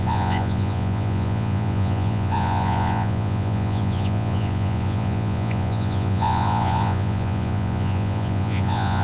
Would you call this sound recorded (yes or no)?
no